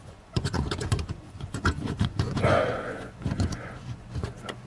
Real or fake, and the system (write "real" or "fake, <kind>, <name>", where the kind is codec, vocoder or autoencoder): fake, vocoder, Vocos